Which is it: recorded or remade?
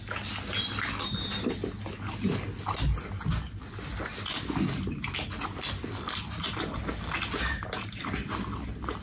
recorded